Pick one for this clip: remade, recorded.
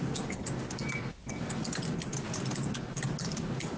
recorded